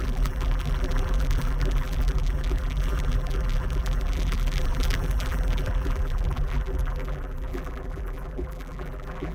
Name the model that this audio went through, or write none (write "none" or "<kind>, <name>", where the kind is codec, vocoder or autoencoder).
vocoder, BigVGAN v2